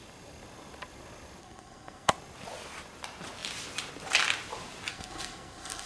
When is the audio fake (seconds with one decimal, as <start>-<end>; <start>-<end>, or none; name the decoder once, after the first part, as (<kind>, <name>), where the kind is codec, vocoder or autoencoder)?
1.4-2.1 (codec, SNAC); 4.9-5.9